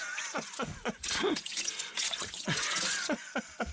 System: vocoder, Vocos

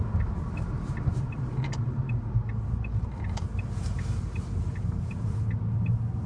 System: none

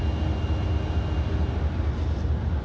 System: none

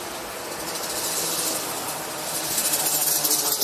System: none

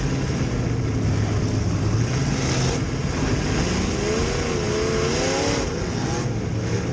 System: none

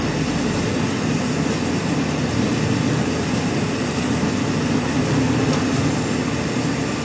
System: none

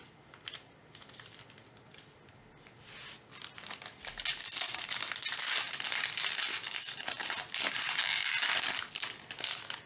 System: none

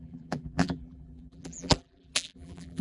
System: vocoder, BigVGAN v2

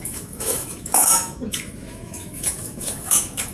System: autoencoder, DAC-VAE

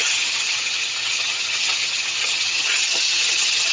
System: vocoder, HiFi-GAN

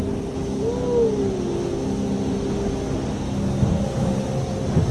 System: none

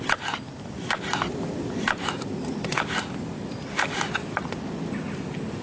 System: none